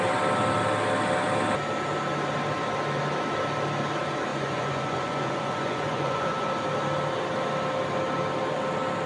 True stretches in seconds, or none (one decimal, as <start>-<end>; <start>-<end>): 0.0-4.3; 6.5-9.1